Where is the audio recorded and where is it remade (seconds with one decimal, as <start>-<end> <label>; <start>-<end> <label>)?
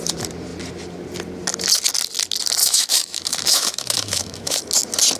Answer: 0.0-2.6 recorded; 2.6-4.6 remade; 4.6-5.2 recorded